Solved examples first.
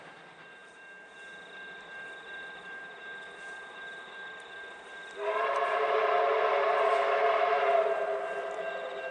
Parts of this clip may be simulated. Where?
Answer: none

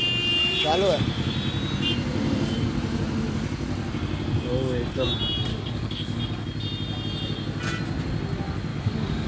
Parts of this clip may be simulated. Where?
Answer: 5.5-6.2 (codec, DAC); 8.7-9.3

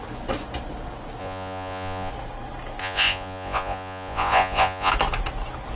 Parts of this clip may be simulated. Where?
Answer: 1.2-2.1 (vocoder, Vocos); 2.8-4.9

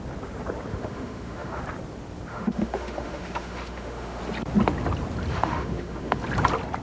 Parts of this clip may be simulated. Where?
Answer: 0.7-1.6 (autoencoder, DAC-VAE); 2.3-4.2; 5.3-6.2